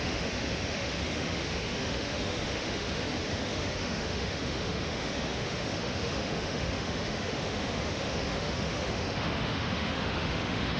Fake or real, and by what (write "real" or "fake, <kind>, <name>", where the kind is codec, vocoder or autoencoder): fake, autoencoder, DAC-VAE